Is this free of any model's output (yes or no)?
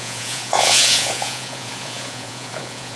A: no